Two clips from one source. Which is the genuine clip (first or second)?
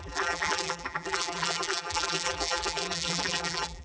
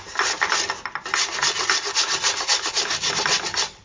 second